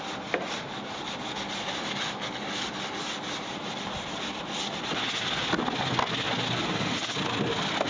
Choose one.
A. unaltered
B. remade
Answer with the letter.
A